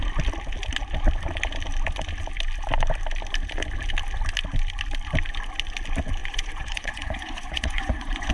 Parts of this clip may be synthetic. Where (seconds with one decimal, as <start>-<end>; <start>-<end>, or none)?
6.2-8.3